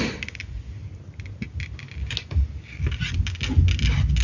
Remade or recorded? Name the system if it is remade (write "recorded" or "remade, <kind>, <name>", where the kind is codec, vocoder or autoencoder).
recorded